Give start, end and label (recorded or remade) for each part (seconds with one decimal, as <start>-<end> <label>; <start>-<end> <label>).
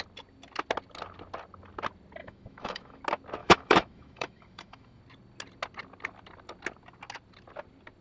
0.0-2.2 recorded; 2.2-3.0 remade; 3.0-3.4 recorded; 3.4-5.0 remade; 5.0-8.0 recorded